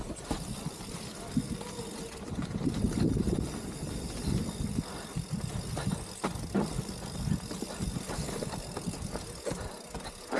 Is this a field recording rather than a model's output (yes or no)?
yes